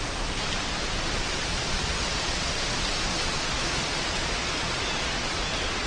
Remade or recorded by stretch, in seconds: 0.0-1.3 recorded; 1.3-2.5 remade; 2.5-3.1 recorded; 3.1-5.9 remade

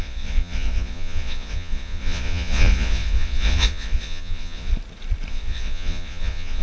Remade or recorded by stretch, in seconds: 0.0-4.7 remade; 4.7-5.3 recorded; 5.3-6.6 remade

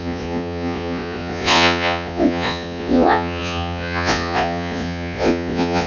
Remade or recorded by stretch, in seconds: 0.0-5.9 remade

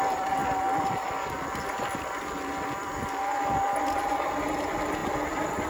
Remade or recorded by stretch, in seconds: 0.0-5.7 recorded

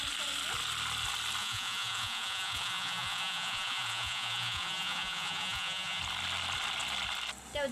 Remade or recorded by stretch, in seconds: 0.0-1.4 recorded; 1.4-6.0 remade; 6.0-7.7 recorded